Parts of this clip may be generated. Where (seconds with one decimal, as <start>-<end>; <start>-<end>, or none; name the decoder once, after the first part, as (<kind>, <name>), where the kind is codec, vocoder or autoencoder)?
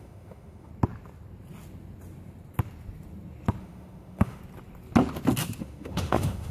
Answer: 0.0-0.7 (autoencoder, DAC-VAE); 3.6-4.4; 5.6-6.5